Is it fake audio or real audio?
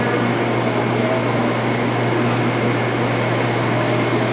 real